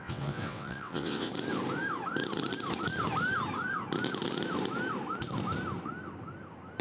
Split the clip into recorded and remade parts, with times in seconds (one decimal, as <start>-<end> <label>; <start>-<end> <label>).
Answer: 0.0-1.3 remade; 1.3-6.8 recorded